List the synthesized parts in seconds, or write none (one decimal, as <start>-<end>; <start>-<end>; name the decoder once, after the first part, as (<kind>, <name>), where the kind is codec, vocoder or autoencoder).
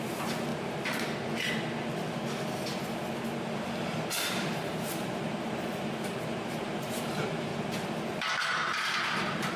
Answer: 0.0-0.5 (vocoder, BigVGAN v2); 4.3-7.5; 8.1-9.6